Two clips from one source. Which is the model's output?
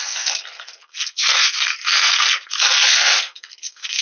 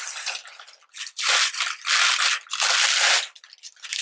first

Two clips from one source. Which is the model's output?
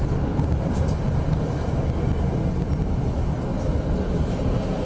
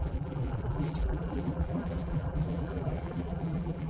second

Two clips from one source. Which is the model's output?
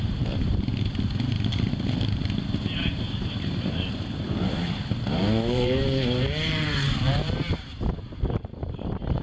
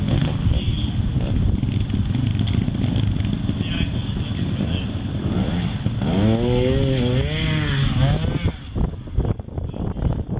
first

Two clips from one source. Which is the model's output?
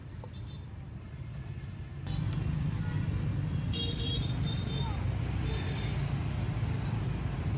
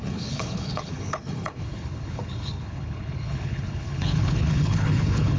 second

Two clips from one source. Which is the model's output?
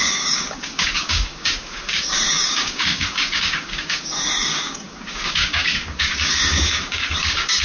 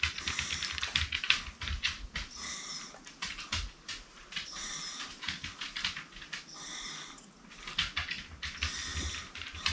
first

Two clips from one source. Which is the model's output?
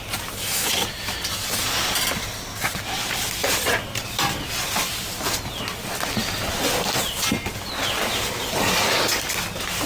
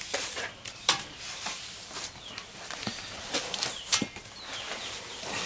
second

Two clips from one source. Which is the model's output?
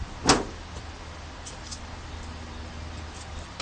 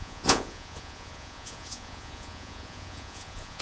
second